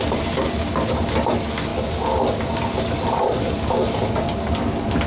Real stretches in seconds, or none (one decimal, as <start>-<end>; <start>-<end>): 0.0-5.1